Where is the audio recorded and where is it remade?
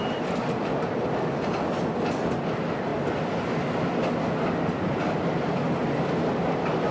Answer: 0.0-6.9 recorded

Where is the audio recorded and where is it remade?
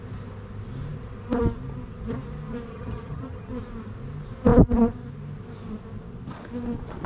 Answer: 0.0-2.7 recorded; 2.7-3.5 remade; 3.5-7.1 recorded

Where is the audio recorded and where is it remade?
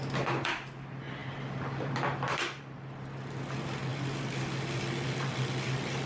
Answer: 0.0-1.2 recorded; 1.2-2.6 remade; 2.6-3.9 recorded; 3.9-5.5 remade; 5.5-6.1 recorded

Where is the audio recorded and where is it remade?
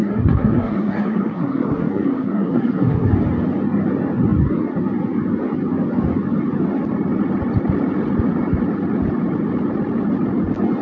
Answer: 0.0-3.1 remade; 3.1-10.8 recorded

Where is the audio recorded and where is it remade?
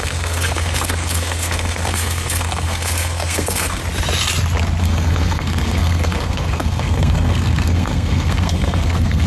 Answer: 0.0-3.8 remade; 3.8-4.8 recorded; 4.8-9.3 remade